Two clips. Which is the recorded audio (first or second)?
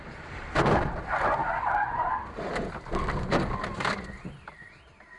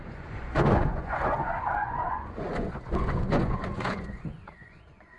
first